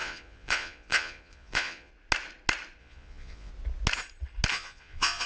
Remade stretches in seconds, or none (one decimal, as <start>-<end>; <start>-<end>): 0.0-1.9; 2.8-3.5; 4.5-5.3